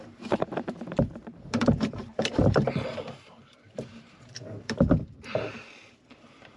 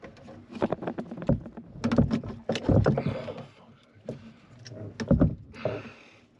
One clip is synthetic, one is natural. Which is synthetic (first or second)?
first